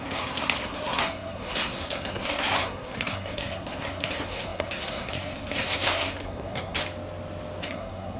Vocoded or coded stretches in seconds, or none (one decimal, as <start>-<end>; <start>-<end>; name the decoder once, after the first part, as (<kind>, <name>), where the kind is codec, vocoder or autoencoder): 0.0-6.8 (codec, SNAC); 7.6-8.2